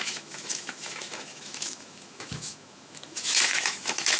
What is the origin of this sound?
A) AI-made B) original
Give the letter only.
A